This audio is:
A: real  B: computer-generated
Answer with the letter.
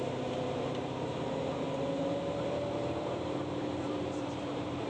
B